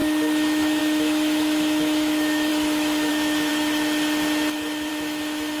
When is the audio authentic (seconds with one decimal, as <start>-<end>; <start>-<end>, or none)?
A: 3.5-4.9